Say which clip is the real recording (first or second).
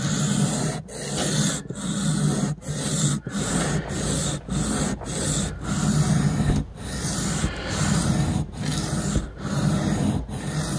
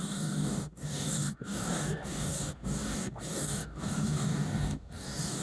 first